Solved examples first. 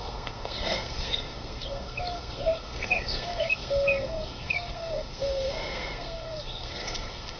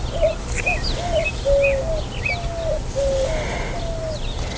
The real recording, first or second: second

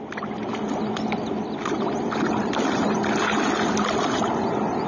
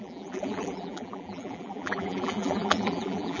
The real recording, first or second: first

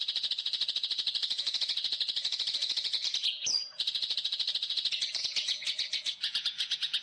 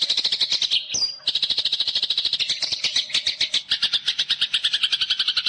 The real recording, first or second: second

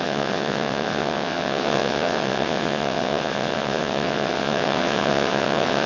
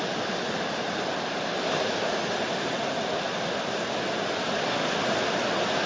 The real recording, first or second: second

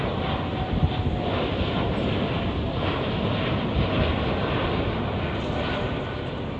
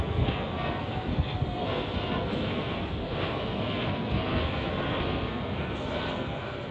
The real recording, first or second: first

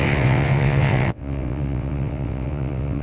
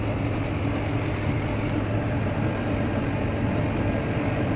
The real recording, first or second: second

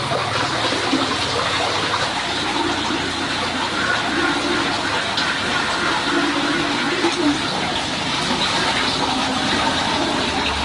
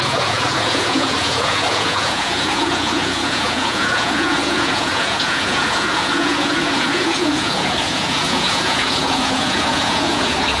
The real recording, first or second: first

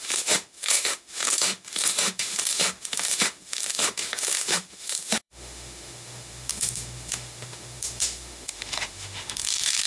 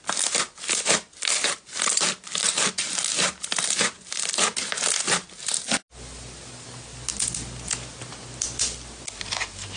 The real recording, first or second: second